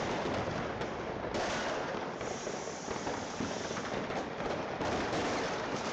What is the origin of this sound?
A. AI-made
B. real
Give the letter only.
B